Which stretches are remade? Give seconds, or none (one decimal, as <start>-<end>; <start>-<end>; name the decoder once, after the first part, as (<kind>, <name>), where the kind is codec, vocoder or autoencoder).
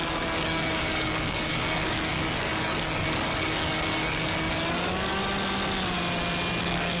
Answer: 0.0-5.2 (codec, DAC); 6.6-7.0